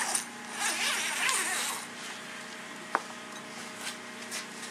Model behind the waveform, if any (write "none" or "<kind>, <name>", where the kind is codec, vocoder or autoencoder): none